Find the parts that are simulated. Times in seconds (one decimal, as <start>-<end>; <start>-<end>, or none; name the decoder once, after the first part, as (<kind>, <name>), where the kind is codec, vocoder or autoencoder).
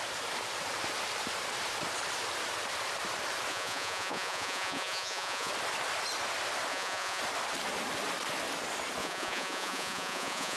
3.5-5.5 (vocoder, Vocos); 6.7-7.2; 9.0-10.6